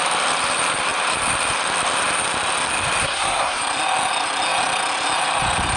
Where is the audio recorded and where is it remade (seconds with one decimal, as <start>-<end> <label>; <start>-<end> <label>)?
0.0-3.0 recorded; 3.0-3.6 remade; 3.6-5.8 recorded